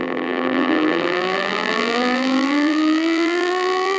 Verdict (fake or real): fake